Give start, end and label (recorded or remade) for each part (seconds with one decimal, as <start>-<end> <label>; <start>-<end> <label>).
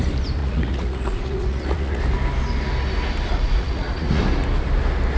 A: 0.0-0.4 recorded; 0.4-2.0 remade; 2.0-3.3 recorded; 3.3-4.2 remade; 4.2-5.2 recorded